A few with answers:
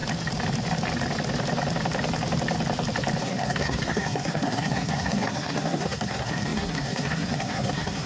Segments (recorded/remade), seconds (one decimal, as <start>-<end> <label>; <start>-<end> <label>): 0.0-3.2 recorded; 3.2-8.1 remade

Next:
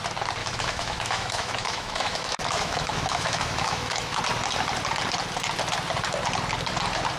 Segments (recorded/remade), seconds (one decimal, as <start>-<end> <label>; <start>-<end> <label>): 0.0-0.4 recorded; 0.4-4.2 remade; 4.2-7.2 recorded

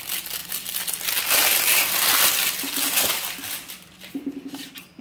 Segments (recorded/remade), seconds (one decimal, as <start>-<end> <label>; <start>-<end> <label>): 0.0-5.0 recorded

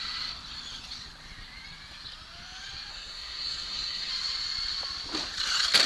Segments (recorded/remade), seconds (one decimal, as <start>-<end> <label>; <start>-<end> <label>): 0.0-2.9 recorded; 2.9-4.1 remade; 4.1-5.9 recorded

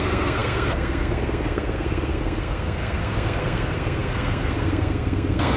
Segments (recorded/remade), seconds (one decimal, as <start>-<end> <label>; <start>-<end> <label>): 0.0-5.6 remade

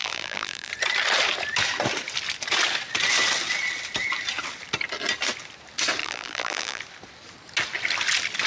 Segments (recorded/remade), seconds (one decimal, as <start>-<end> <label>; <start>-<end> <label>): 0.0-0.7 remade; 0.7-6.0 recorded; 6.0-6.8 remade; 6.8-8.5 recorded

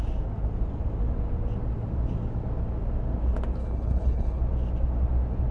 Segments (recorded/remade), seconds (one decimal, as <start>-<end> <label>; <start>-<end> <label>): 0.0-3.6 recorded; 3.6-4.4 remade; 4.4-5.5 recorded